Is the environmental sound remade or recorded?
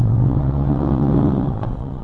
remade